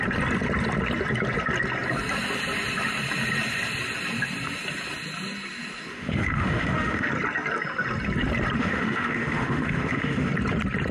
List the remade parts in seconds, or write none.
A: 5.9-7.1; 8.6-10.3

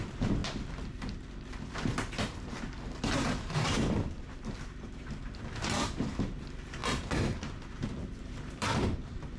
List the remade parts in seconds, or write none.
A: 0.0-0.4; 1.7-6.8; 8.3-9.4

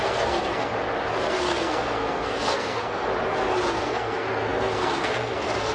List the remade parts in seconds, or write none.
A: 0.0-0.7; 1.3-3.1; 3.7-5.7

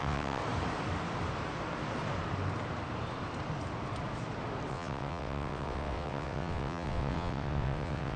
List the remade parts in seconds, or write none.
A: 0.0-0.4; 4.7-8.2

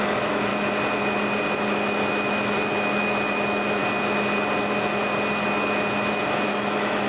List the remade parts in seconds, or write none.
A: 0.0-0.5; 1.6-3.8; 6.1-7.1

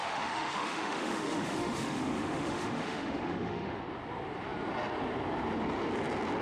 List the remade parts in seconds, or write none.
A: 0.0-3.8

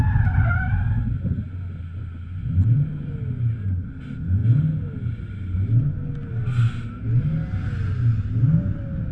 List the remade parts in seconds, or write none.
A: none

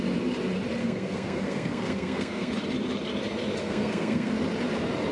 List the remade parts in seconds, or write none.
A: 0.8-2.5; 3.6-4.3